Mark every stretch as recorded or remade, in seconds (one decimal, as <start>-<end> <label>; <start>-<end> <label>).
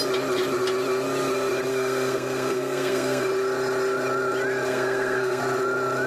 0.0-1.7 recorded; 1.7-3.3 remade; 3.3-4.7 recorded; 4.7-5.4 remade; 5.4-6.1 recorded